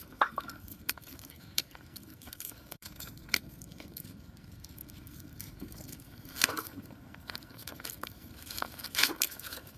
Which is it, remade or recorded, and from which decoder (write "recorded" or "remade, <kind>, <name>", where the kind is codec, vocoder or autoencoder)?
remade, codec, SNAC